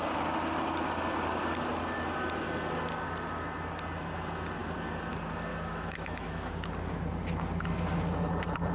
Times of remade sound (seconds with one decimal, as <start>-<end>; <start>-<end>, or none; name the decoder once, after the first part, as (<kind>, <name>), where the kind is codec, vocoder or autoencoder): 5.5-6.5 (autoencoder, DAC-VAE)